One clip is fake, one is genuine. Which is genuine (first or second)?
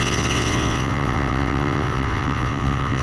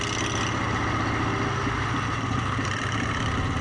second